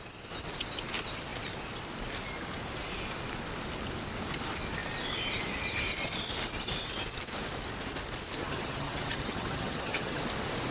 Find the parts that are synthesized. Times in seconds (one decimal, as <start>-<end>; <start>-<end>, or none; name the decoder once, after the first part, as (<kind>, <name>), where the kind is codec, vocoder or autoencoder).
8.4-10.2 (vocoder, HiFi-GAN)